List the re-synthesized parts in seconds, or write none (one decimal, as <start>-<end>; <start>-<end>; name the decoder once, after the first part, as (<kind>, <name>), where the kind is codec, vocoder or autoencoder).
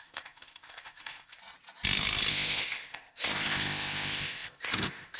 0.0-1.4 (codec, ZipCodec); 2.3-5.2